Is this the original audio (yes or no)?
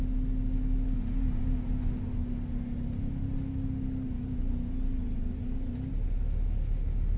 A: yes